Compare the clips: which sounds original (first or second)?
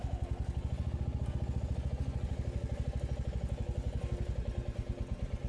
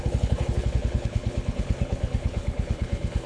first